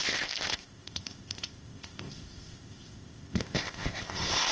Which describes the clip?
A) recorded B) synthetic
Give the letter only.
B